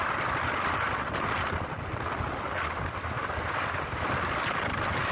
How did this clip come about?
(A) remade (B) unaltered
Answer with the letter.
B